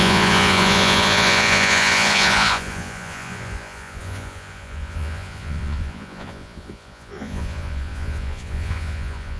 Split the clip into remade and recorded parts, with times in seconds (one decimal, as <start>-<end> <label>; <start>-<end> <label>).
0.0-9.4 remade